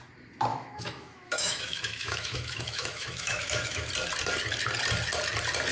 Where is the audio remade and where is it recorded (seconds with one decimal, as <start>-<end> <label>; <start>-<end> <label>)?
0.0-0.5 recorded; 0.5-3.9 remade; 3.9-5.7 recorded